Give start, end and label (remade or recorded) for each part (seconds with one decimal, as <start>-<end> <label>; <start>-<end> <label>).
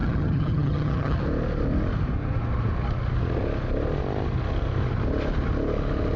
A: 0.0-1.2 remade; 1.2-6.2 recorded